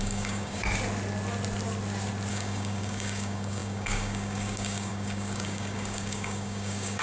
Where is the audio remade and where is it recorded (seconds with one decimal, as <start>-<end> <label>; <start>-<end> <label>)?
0.0-0.6 remade; 0.6-2.3 recorded; 2.3-7.0 remade